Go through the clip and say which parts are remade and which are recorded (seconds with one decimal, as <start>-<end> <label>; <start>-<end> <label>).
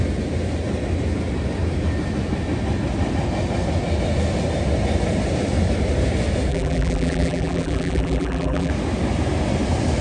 0.0-6.5 recorded; 6.5-8.7 remade; 8.7-10.0 recorded